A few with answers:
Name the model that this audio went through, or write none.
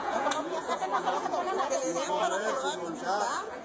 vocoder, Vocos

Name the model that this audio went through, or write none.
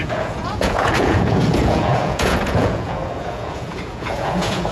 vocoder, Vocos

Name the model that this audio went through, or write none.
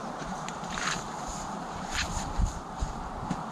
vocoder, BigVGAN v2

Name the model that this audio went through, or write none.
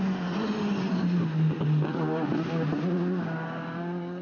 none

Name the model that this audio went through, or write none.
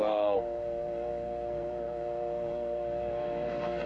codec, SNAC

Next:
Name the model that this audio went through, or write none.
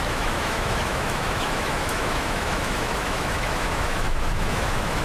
autoencoder, DAC-VAE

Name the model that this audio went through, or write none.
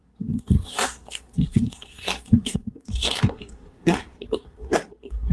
codec, SNAC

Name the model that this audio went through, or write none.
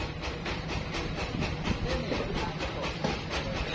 vocoder, BigVGAN v2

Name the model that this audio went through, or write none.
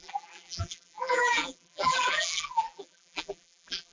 vocoder, BigVGAN v2